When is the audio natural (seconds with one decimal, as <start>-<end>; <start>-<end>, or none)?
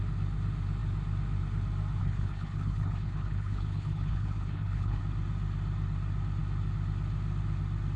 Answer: 0.0-2.0; 5.0-8.0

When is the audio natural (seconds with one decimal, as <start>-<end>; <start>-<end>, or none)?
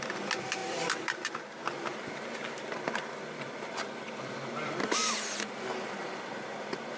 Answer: 0.0-0.6; 4.8-7.0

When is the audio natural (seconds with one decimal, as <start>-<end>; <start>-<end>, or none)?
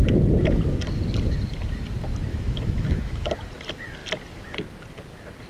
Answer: 0.0-2.3; 3.3-5.5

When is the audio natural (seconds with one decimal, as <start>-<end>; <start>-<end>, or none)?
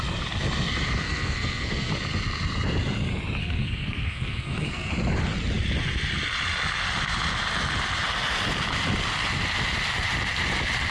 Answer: 0.0-1.0; 1.9-3.4; 4.9-10.9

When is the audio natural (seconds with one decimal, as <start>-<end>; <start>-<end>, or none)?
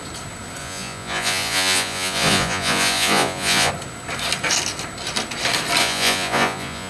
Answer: 0.0-0.6; 3.7-5.8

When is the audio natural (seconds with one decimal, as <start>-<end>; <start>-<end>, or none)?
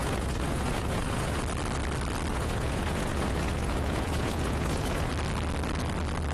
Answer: 1.4-2.3; 5.1-6.3